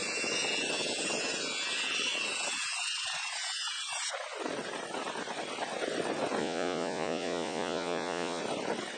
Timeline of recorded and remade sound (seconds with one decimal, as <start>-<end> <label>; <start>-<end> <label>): 0.0-6.4 recorded; 6.4-8.4 remade; 8.4-9.0 recorded